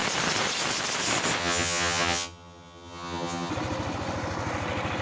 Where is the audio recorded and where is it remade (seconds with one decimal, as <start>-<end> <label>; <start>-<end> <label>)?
0.0-1.4 recorded; 1.4-3.5 remade; 3.5-5.0 recorded